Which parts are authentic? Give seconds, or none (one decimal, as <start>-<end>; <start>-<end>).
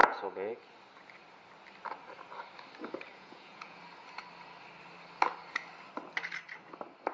0.6-3.1; 3.8-7.1